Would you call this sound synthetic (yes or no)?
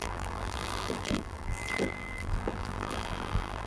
yes